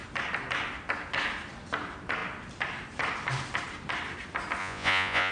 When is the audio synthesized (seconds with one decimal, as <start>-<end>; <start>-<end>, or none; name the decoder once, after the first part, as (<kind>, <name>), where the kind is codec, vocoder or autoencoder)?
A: 4.6-5.3 (vocoder, Vocos)